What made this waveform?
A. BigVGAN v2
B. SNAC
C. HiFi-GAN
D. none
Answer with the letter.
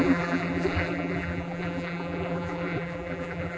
A